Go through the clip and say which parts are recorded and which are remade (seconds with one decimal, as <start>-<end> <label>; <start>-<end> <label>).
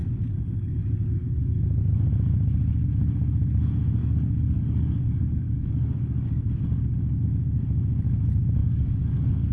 0.0-2.1 remade; 2.1-4.0 recorded; 4.0-6.5 remade; 6.5-8.6 recorded; 8.6-9.5 remade